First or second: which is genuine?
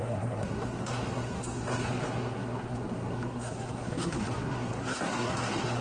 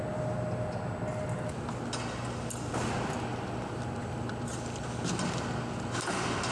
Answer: second